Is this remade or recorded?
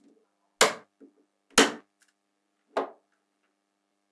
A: recorded